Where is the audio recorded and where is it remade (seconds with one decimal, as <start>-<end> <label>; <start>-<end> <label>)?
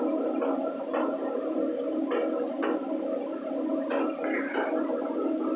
0.0-5.6 recorded